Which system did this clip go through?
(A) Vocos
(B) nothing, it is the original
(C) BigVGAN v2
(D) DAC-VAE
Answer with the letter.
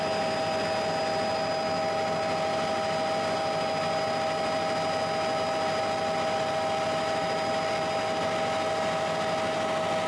B